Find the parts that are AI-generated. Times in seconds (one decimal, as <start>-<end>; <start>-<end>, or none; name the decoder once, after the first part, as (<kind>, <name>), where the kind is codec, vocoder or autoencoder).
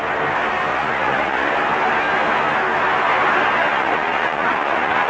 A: 0.7-1.5 (vocoder, Vocos); 3.7-5.1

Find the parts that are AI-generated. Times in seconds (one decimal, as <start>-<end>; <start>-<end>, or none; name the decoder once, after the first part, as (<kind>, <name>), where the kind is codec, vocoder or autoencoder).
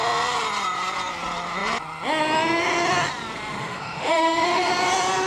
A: 3.6-4.7 (autoencoder, DAC-VAE)